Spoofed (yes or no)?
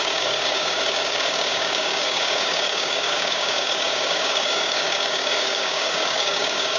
yes